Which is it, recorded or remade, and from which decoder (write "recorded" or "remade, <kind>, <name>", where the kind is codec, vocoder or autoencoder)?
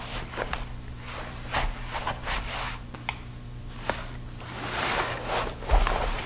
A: recorded